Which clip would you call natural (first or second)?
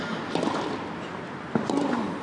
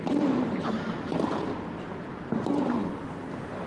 first